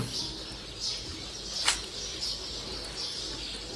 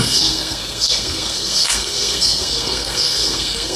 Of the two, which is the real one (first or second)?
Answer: first